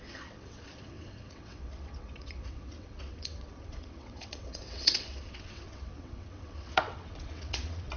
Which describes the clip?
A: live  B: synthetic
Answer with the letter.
B